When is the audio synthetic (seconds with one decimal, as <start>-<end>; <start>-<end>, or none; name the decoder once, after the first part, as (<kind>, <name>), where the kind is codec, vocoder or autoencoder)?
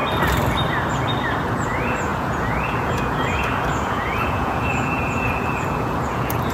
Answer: 1.5-6.5 (vocoder, Vocos)